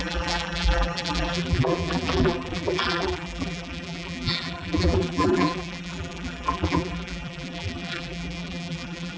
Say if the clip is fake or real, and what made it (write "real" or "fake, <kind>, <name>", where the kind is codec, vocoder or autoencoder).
fake, vocoder, BigVGAN v2